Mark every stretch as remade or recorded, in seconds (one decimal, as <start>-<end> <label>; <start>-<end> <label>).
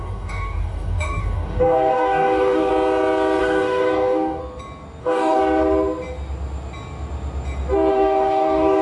0.0-2.7 remade; 2.7-3.4 recorded; 3.4-4.4 remade; 4.4-5.0 recorded; 5.0-5.4 remade; 5.4-7.9 recorded; 7.9-8.8 remade